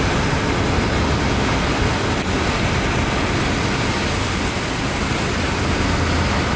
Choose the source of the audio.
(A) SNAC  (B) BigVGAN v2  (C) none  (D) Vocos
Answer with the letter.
C